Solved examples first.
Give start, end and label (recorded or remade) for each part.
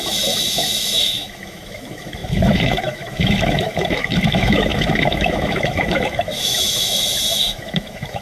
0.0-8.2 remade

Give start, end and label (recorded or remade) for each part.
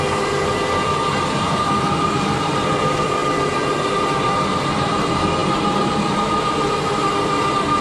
0.0-7.8 recorded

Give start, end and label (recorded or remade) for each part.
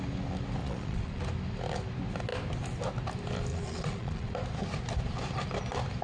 0.0-0.6 recorded; 0.6-1.2 remade; 1.2-3.5 recorded; 3.5-4.3 remade; 4.3-6.0 recorded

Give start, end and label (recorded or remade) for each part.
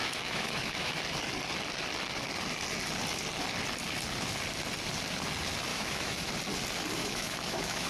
0.0-0.9 remade; 0.9-5.7 recorded; 5.7-6.3 remade; 6.3-7.0 recorded; 7.0-7.9 remade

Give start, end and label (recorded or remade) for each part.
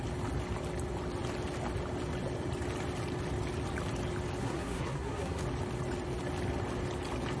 0.0-4.4 recorded; 4.4-5.4 remade; 5.4-7.4 recorded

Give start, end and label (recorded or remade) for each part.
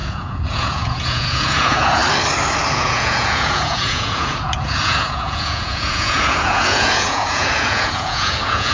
0.0-2.0 remade; 2.0-2.7 recorded; 2.7-8.7 remade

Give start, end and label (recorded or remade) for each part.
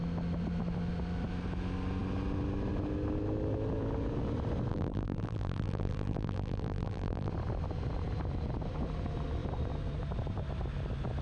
0.0-4.7 recorded; 4.7-7.3 remade; 7.3-11.2 recorded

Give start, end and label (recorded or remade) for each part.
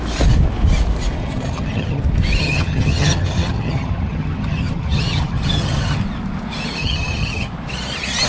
0.0-1.2 recorded; 1.2-2.0 remade; 2.0-2.4 recorded; 2.4-6.0 remade; 6.0-6.8 recorded; 6.8-7.5 remade; 7.5-8.3 recorded